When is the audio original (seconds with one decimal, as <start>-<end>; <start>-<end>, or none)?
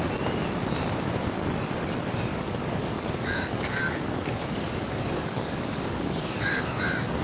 0.0-2.3; 6.6-7.2